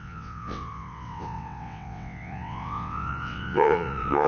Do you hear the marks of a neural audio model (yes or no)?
yes